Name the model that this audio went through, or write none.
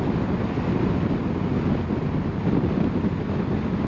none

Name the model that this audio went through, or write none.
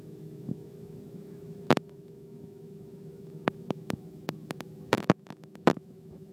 autoencoder, DAC-VAE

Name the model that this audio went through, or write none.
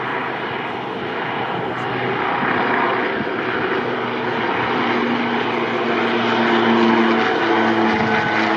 none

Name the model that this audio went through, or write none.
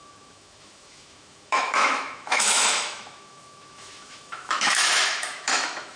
autoencoder, DAC-VAE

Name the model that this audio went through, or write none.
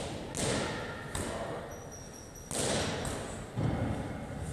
none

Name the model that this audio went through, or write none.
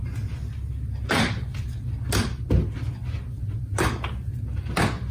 none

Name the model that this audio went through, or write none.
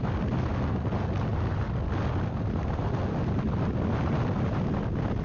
none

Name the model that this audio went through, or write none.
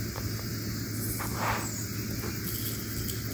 none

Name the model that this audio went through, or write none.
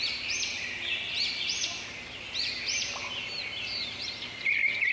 none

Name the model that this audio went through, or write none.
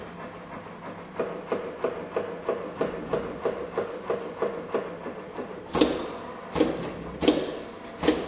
none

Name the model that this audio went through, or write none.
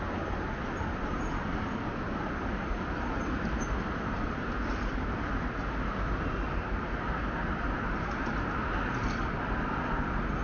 none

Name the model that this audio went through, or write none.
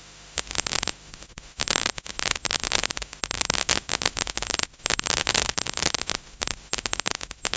autoencoder, DAC-VAE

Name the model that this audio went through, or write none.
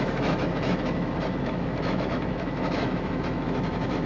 autoencoder, DAC-VAE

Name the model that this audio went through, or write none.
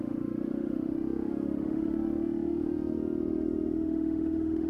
autoencoder, DAC-VAE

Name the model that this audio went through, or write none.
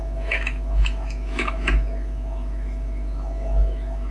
autoencoder, DAC-VAE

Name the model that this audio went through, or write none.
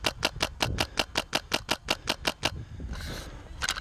none